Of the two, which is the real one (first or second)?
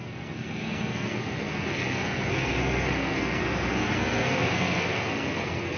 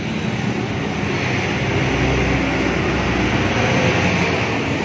second